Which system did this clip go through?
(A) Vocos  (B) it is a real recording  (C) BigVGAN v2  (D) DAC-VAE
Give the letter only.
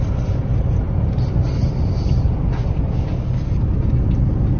B